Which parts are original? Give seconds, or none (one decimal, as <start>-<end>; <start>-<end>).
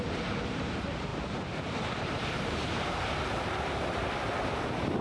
none